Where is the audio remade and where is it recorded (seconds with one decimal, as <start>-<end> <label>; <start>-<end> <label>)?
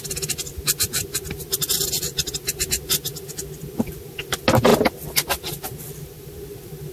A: 0.0-6.9 recorded